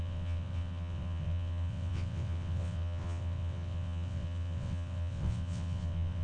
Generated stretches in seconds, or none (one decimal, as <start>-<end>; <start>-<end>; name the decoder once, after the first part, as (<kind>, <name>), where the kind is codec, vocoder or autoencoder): 0.0-6.2 (vocoder, WaveNeXt)